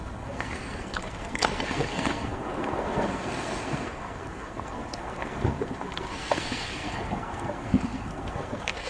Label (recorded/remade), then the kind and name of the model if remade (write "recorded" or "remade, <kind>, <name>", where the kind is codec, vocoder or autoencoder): remade, codec, SNAC